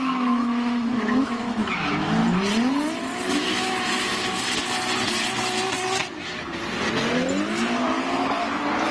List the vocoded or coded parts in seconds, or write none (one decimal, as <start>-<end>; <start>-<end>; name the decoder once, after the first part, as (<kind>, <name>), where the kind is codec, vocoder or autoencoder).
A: 0.0-2.2 (autoencoder, DAC-VAE); 3.3-4.1